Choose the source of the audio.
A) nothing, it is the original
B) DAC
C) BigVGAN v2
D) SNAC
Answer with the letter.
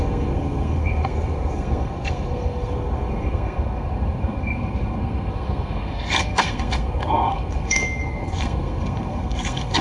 D